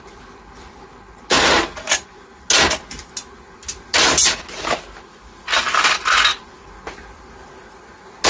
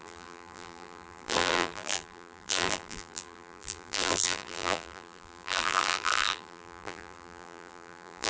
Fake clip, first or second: second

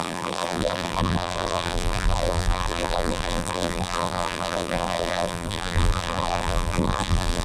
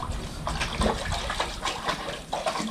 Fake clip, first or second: first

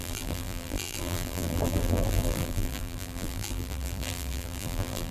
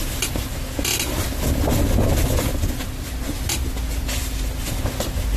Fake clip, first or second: first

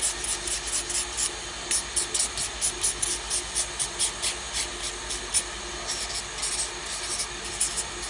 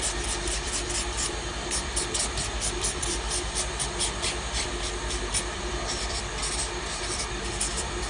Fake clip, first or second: second